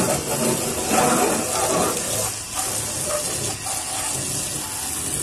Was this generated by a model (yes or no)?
no